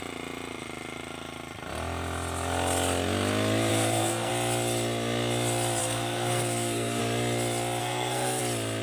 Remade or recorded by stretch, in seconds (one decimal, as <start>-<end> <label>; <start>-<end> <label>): 0.0-3.7 recorded; 3.7-4.3 remade; 4.3-5.8 recorded; 5.8-7.0 remade; 7.0-7.8 recorded; 7.8-8.4 remade; 8.4-8.8 recorded